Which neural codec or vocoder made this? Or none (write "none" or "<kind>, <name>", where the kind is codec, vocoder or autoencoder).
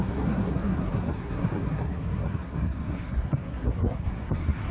codec, SNAC